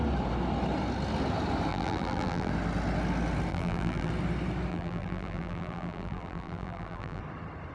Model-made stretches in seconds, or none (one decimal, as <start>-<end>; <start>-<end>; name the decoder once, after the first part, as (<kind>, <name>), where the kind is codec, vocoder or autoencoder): 1.7-2.5 (vocoder, BigVGAN v2); 3.5-4.1; 4.7-7.2